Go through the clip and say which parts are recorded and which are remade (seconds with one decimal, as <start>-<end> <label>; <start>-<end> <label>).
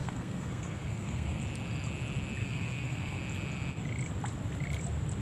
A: 0.0-1.4 remade; 1.4-2.4 recorded; 2.4-3.2 remade; 3.2-5.2 recorded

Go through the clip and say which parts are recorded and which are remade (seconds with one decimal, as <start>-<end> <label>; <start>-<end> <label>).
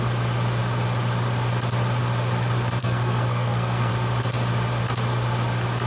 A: 0.0-2.8 recorded; 2.8-3.9 remade; 3.9-5.9 recorded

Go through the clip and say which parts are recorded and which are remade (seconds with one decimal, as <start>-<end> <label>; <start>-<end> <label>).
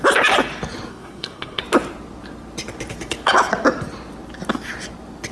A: 0.0-0.9 recorded; 0.9-1.6 remade; 1.6-5.3 recorded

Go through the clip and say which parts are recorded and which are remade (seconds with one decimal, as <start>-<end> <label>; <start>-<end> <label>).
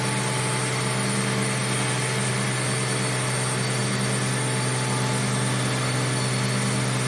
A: 0.0-7.1 recorded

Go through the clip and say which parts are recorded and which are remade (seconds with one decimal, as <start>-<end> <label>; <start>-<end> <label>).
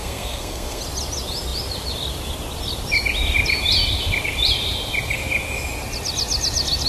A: 0.0-0.8 remade; 0.8-6.9 recorded